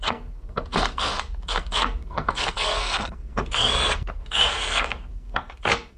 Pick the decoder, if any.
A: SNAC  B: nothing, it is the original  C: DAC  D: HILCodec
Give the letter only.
A